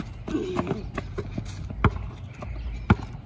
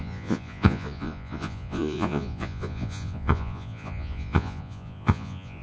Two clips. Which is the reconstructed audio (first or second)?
second